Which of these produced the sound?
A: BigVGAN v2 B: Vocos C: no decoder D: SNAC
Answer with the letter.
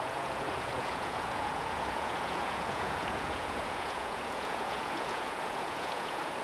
B